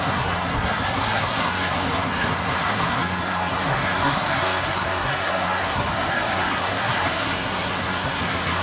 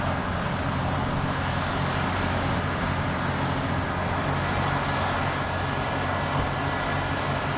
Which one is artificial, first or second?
first